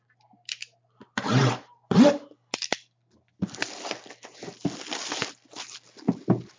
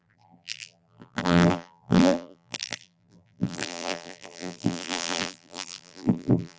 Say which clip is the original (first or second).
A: first